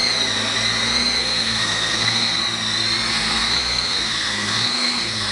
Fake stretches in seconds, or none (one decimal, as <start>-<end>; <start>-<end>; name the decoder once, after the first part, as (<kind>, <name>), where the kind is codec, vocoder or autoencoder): 1.2-2.4 (codec, SNAC); 3.1-5.3